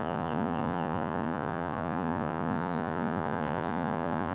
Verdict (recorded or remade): remade